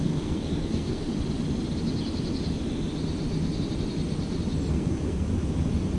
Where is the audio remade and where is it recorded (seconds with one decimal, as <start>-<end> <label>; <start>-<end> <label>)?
0.0-1.1 remade; 1.1-4.7 recorded; 4.7-5.3 remade; 5.3-6.0 recorded